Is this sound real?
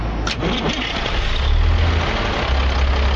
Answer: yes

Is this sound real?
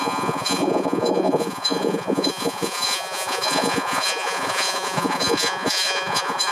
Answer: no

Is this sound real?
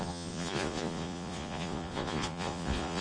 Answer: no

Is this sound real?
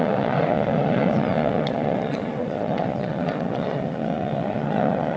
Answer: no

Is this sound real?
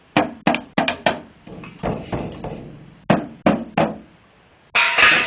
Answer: yes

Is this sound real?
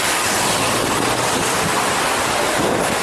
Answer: yes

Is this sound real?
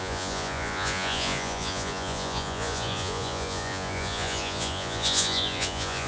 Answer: no